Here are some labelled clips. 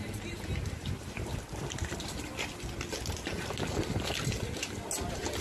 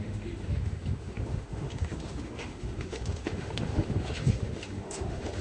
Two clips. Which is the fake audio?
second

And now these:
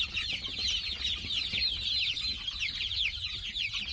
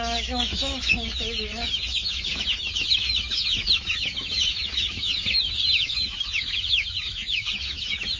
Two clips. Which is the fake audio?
second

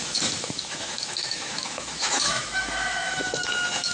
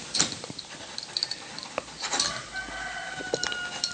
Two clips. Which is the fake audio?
first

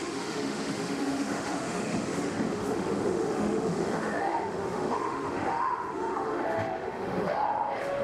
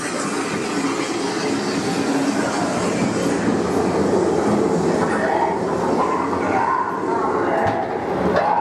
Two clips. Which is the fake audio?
first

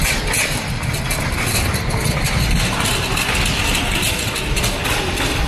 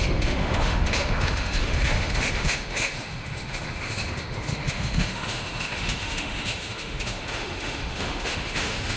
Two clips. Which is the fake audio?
second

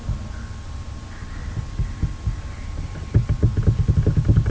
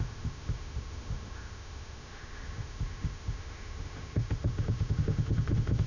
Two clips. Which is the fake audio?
second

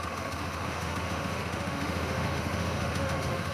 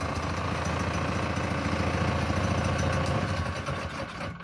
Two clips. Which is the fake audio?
first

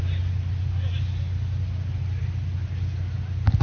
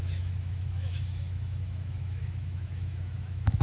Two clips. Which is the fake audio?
second